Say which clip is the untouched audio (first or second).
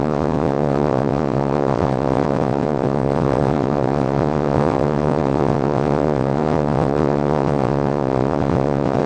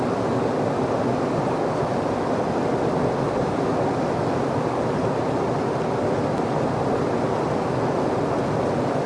second